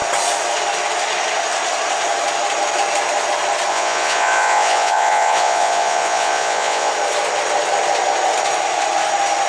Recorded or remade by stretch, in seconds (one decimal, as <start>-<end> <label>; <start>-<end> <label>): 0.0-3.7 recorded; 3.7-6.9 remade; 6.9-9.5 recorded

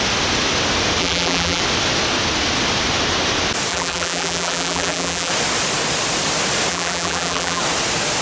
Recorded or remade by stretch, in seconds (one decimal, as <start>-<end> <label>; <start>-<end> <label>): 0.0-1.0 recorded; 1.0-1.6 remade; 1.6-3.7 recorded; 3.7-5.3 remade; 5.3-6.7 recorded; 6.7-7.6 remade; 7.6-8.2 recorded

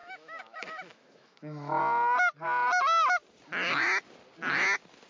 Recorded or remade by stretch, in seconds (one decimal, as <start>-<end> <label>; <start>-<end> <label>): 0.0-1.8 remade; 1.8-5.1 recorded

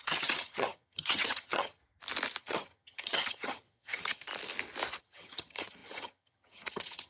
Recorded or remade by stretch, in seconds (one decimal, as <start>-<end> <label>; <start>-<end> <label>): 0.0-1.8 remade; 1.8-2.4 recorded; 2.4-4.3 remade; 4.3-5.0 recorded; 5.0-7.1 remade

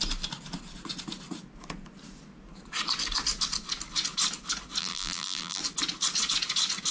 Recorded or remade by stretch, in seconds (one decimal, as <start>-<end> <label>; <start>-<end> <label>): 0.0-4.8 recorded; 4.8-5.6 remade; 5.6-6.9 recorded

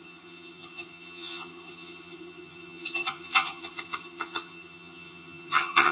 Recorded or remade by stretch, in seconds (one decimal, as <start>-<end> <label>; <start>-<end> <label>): 0.0-5.9 remade